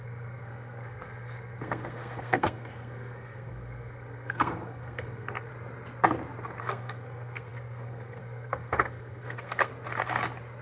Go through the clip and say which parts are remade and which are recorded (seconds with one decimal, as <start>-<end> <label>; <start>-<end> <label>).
0.0-5.5 remade; 5.5-6.6 recorded; 6.6-9.7 remade; 9.7-10.6 recorded